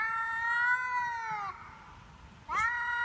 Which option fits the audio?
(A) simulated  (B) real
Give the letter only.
B